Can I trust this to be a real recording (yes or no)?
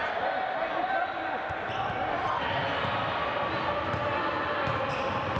yes